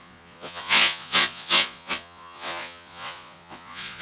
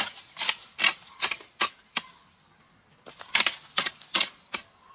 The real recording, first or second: second